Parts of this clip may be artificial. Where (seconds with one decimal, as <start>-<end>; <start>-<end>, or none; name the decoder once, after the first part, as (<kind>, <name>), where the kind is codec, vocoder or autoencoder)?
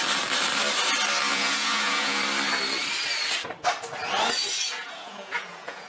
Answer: 1.3-2.2 (vocoder, Vocos); 4.8-5.9